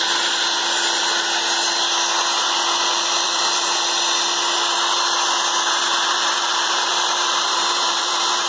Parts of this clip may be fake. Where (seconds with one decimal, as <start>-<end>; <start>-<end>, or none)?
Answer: 2.9-3.9; 5.9-8.5